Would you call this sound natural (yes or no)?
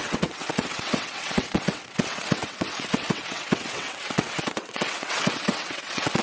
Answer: no